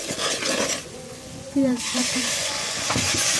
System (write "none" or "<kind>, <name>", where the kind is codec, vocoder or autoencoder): vocoder, Vocos